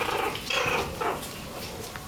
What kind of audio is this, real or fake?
fake